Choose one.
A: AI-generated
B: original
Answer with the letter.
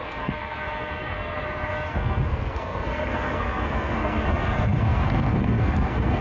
A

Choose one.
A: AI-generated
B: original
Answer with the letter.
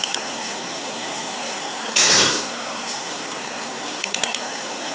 A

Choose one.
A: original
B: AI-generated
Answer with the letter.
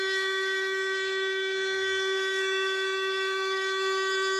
B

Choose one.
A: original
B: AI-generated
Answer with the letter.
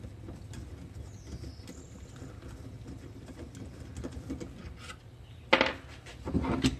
A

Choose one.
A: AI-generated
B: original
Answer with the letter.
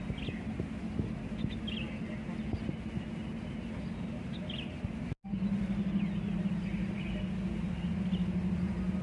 B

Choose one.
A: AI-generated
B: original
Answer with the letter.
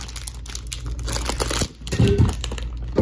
B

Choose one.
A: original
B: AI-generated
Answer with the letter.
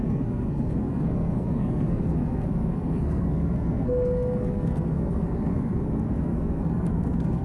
B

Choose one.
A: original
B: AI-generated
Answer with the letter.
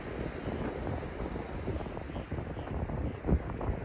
A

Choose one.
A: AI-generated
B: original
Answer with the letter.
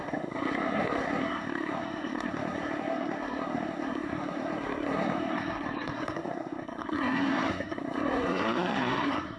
A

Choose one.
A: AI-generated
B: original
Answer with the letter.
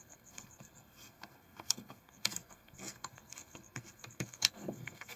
A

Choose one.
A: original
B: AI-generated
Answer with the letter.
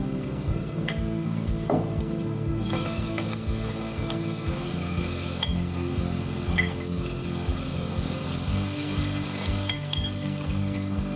B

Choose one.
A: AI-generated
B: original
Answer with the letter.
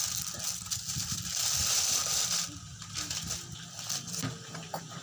B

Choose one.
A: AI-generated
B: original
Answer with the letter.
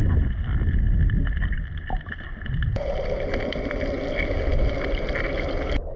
B